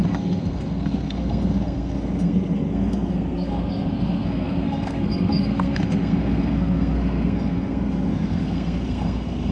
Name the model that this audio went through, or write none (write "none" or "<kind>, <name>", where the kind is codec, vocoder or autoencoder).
codec, SNAC